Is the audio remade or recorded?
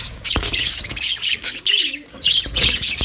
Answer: remade